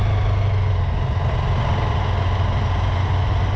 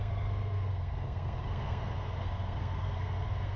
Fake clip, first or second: second